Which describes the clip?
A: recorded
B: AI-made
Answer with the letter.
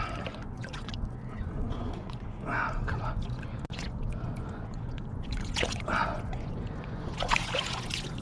B